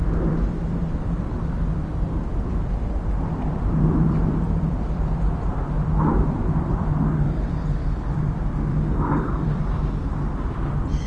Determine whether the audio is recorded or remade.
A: remade